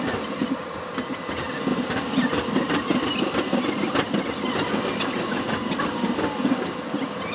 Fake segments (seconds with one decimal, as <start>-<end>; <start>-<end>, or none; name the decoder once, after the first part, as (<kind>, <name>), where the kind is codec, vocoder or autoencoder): none